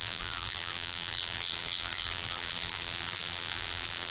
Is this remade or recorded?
remade